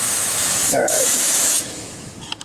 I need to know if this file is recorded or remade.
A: remade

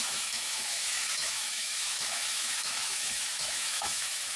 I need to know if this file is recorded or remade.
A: remade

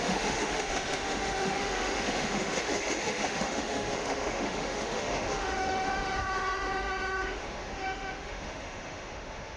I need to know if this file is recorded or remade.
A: remade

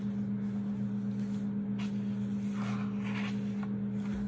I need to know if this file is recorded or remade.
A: recorded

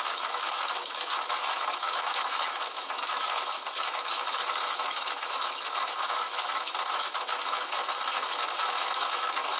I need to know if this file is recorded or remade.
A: remade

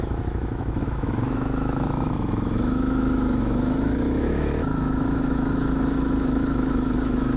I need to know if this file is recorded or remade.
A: remade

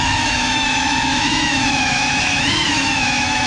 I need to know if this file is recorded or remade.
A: remade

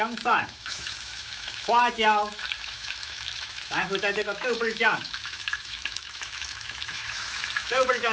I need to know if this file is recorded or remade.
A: remade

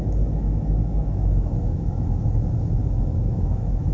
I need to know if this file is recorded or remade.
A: remade